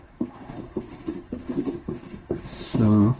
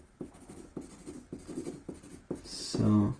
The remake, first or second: first